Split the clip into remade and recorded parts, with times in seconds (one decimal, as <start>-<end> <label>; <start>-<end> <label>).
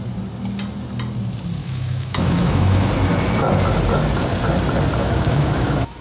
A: 0.0-1.6 recorded; 1.6-2.9 remade; 2.9-5.0 recorded; 5.0-6.0 remade